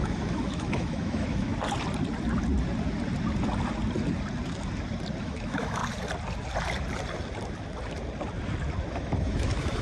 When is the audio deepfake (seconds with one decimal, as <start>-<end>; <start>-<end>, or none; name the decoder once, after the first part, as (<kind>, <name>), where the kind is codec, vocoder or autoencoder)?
0.0-1.5 (autoencoder, DAC-VAE); 5.2-5.8; 8.9-9.8